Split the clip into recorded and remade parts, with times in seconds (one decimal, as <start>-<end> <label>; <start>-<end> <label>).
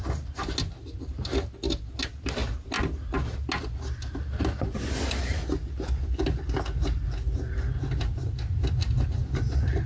0.0-9.9 recorded